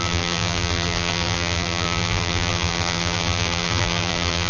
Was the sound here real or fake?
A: fake